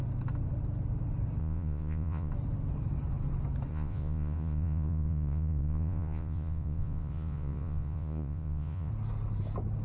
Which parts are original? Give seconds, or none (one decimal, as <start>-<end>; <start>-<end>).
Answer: 0.0-1.4; 2.3-3.7; 8.9-9.8